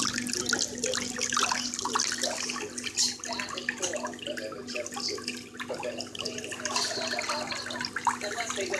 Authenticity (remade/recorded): recorded